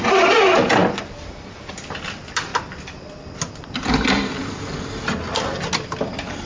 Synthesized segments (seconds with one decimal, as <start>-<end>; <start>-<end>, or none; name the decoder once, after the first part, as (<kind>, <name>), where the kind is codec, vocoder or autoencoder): none